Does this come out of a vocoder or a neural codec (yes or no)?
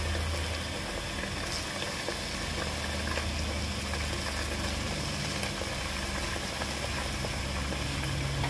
no